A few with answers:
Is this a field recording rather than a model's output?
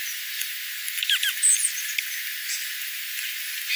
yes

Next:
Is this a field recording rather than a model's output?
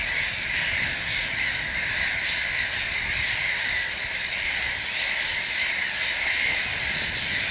yes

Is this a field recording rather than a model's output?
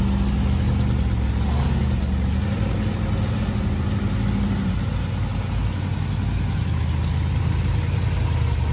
yes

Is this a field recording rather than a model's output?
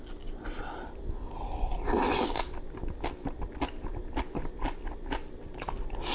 yes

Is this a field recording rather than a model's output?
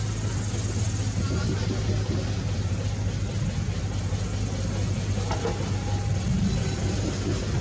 yes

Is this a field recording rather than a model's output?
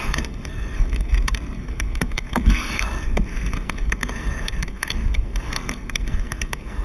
no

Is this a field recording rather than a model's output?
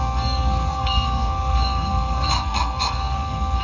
no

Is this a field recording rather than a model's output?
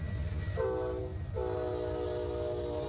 yes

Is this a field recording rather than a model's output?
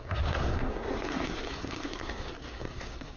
no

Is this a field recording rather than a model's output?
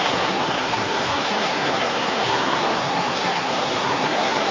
no